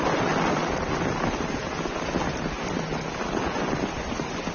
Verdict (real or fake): real